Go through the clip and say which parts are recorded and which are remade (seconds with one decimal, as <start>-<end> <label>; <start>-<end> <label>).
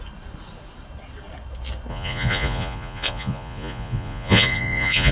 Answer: 0.0-1.9 recorded; 1.9-5.1 remade